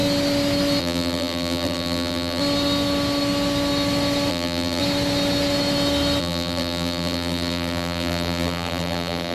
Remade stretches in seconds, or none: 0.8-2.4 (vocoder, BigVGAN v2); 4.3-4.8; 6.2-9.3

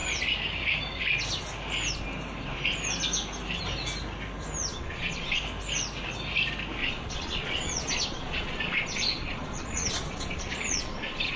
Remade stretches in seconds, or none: 4.7-5.4 (vocoder, Vocos); 6.8-11.4

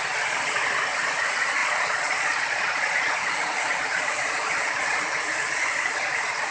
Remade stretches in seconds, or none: 1.6-3.1 (vocoder, Vocos)

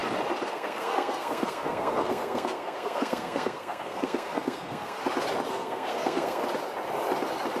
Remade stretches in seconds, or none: 0.5-5.0 (codec, SNAC); 5.5-6.4

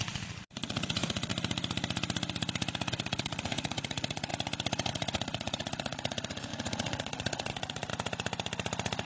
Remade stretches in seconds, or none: 0.0-1.3 (vocoder, Vocos); 2.9-4.3; 4.9-7.9